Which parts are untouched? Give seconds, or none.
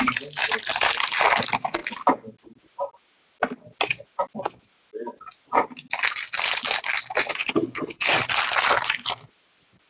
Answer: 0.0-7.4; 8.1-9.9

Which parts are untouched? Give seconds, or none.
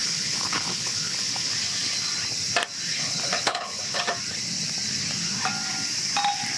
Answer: 1.5-2.9; 4.0-6.6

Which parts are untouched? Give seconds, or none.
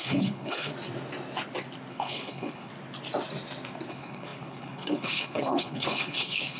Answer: 0.7-1.9; 2.7-3.9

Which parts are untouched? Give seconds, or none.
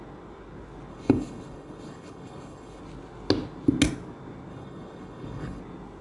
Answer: 0.0-0.9; 2.8-4.5; 5.6-6.0